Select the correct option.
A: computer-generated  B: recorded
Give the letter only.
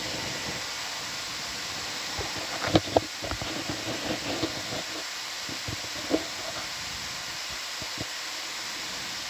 B